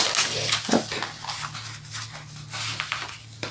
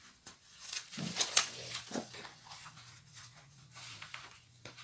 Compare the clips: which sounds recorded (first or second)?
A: first